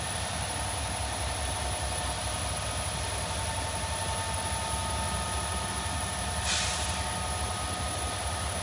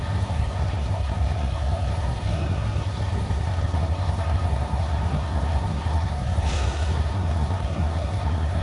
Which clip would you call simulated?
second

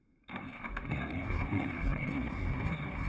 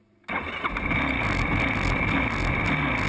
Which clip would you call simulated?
first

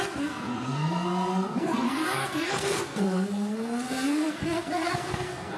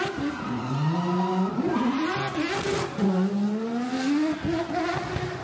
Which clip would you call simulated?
first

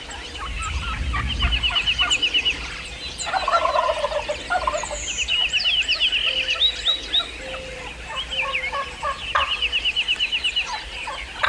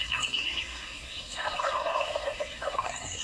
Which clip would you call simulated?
second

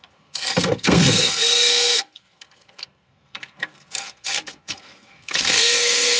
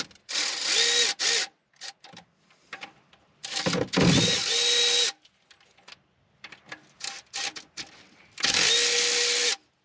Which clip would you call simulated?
first